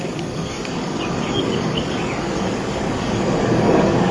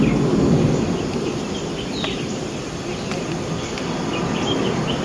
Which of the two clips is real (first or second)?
second